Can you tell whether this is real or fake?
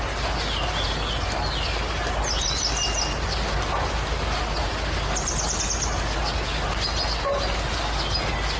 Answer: real